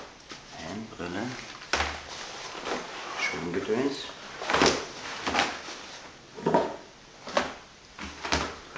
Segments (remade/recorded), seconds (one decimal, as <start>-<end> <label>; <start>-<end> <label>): 0.0-8.8 recorded